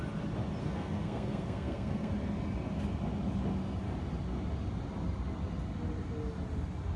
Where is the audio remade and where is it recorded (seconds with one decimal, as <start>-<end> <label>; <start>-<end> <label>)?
0.0-0.6 recorded; 0.6-2.1 remade; 2.1-7.0 recorded